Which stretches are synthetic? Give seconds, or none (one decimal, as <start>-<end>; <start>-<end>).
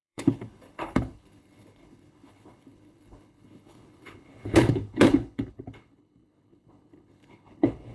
0.0-7.9